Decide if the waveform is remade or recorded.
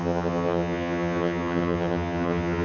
remade